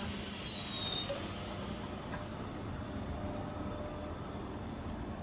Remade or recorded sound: recorded